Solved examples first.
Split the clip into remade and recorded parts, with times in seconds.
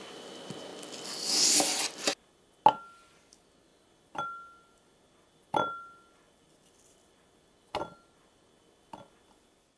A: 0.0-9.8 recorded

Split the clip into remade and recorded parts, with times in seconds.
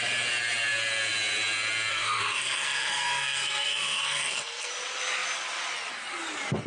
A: 0.0-1.9 recorded; 1.9-4.7 remade; 4.7-6.7 recorded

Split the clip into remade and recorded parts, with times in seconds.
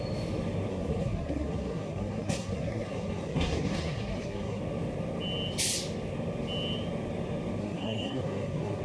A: 0.0-0.7 recorded; 0.7-4.6 remade; 4.6-7.6 recorded; 7.6-8.8 remade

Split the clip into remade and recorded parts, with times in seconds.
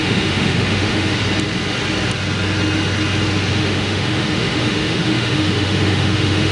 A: 0.0-1.2 remade; 1.2-3.5 recorded; 3.5-6.5 remade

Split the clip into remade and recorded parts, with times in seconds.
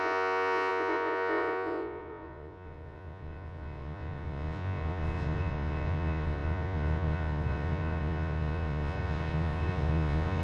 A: 0.0-10.4 remade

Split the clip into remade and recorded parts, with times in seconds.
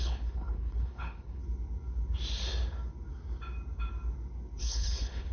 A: 0.0-1.4 remade; 1.4-4.6 recorded; 4.6-5.3 remade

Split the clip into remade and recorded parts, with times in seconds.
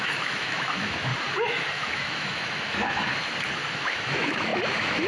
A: 0.0-1.1 remade; 1.1-1.7 recorded; 1.7-3.1 remade; 3.1-3.9 recorded; 3.9-5.1 remade